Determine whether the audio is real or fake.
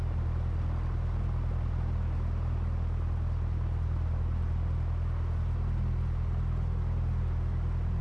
real